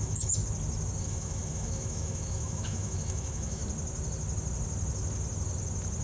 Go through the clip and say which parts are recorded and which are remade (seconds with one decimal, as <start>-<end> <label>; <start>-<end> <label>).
0.0-0.4 remade; 0.4-1.0 recorded; 1.0-3.6 remade; 3.6-6.0 recorded